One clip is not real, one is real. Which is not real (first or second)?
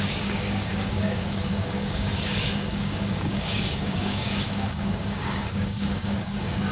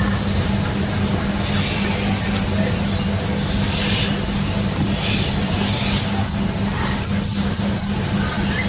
first